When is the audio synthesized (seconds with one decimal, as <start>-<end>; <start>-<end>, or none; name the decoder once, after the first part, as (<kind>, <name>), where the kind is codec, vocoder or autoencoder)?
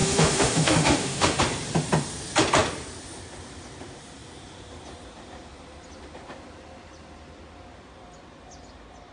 0.0-1.4 (autoencoder, DAC-VAE)